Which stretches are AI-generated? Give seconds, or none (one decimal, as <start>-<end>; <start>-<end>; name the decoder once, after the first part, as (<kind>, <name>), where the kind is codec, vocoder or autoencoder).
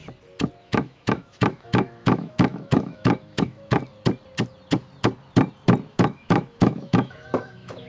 0.6-3.8 (autoencoder, DAC-VAE); 5.9-7.9